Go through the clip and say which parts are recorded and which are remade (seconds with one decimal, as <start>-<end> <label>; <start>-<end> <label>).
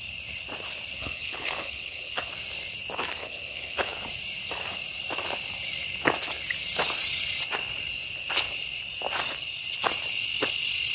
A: 0.0-1.0 recorded; 1.0-2.3 remade; 2.3-3.2 recorded; 3.2-4.0 remade; 4.0-10.9 recorded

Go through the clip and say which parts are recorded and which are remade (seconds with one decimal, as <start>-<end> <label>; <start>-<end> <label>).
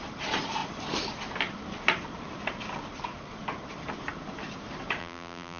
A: 0.0-5.0 recorded; 5.0-5.6 remade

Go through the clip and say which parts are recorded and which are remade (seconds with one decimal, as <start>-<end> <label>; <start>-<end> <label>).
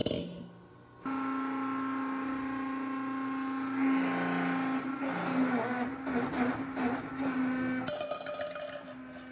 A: 0.0-9.3 recorded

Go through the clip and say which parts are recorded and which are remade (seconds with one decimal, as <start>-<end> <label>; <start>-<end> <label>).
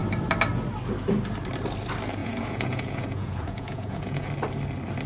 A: 0.0-2.2 recorded; 2.2-4.3 remade; 4.3-5.1 recorded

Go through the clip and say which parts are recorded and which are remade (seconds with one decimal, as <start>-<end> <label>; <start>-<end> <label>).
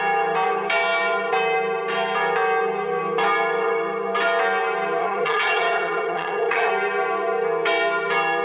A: 0.0-5.0 recorded; 5.0-6.7 remade; 6.7-8.4 recorded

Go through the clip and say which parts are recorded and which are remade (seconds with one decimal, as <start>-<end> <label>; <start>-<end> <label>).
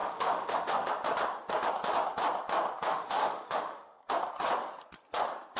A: 0.0-0.9 remade; 0.9-2.9 recorded; 2.9-4.0 remade; 4.0-5.6 recorded